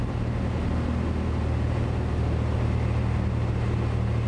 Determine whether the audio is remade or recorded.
recorded